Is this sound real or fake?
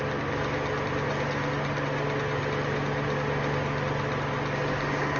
real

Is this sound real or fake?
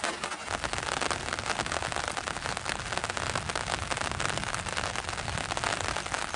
real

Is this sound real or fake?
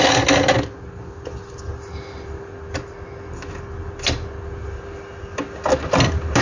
real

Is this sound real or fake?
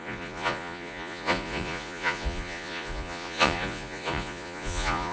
fake